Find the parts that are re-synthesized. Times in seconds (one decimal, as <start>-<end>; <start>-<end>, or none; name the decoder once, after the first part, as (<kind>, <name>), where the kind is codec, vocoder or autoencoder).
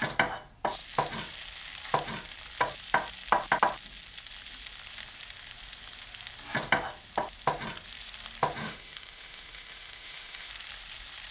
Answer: 8.6-10.5 (autoencoder, DAC-VAE)